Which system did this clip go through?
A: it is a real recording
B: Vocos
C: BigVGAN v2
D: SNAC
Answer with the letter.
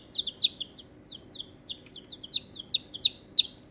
A